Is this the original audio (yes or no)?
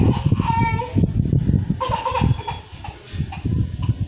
yes